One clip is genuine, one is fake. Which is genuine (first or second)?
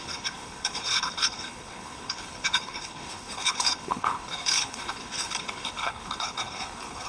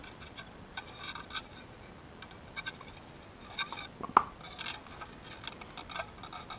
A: second